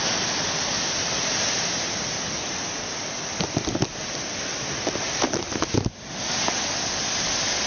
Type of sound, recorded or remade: recorded